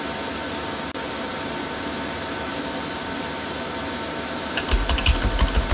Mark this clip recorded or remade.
recorded